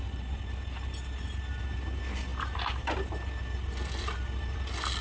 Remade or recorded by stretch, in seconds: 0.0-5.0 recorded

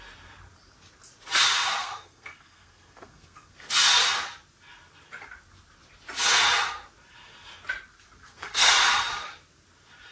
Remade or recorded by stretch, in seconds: 0.0-1.8 recorded; 1.8-3.7 remade; 3.7-8.2 recorded; 8.2-8.7 remade; 8.7-10.1 recorded

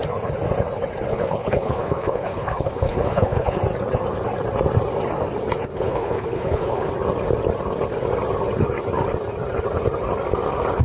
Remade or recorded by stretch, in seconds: 0.0-1.1 recorded; 1.1-3.6 remade; 3.6-5.7 recorded; 5.7-6.9 remade; 6.9-10.8 recorded

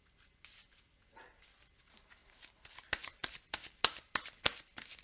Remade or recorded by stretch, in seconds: 0.0-5.0 recorded